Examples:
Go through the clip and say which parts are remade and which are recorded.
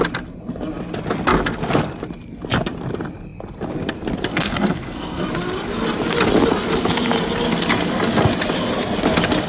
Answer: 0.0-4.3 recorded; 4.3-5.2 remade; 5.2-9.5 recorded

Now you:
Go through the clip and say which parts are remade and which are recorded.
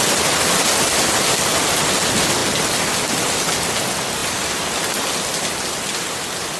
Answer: 0.0-6.6 recorded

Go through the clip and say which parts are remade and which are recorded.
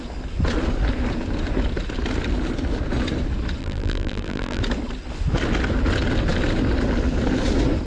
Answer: 0.0-3.6 recorded; 3.6-4.6 remade; 4.6-7.9 recorded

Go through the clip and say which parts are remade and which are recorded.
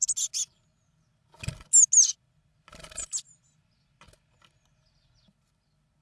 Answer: 0.0-6.0 recorded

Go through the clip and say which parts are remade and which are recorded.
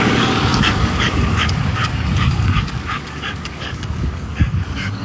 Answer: 0.0-5.0 remade